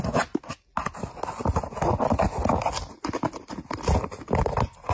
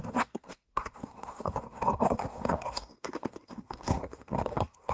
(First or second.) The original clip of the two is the first